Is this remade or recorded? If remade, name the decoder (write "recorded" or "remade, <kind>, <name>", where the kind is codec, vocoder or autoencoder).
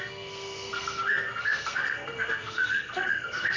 remade, codec, SNAC